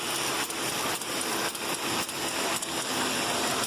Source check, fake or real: fake